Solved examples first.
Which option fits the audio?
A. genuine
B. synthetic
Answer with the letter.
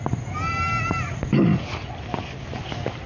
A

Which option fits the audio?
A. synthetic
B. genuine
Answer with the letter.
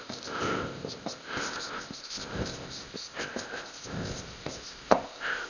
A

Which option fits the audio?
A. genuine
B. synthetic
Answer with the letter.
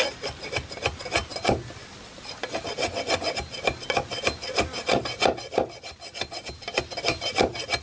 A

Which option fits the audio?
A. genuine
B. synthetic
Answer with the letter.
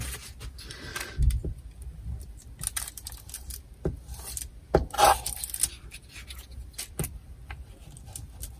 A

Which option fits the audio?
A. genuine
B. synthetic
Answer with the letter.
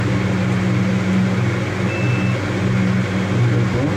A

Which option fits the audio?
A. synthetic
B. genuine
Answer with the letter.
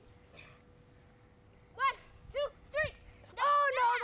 B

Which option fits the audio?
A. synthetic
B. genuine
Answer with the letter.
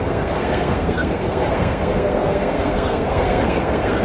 A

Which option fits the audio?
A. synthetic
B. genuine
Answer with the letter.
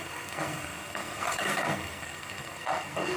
A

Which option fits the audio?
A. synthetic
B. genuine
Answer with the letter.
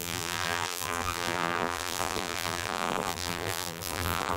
A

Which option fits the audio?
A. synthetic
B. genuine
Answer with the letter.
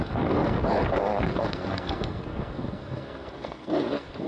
A